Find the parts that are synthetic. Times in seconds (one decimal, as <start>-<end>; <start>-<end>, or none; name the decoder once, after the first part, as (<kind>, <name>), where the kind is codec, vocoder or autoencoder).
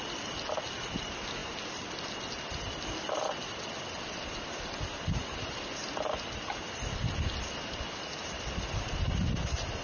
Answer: none